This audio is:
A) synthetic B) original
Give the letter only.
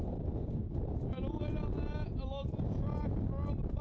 B